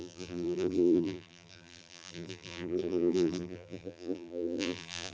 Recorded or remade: remade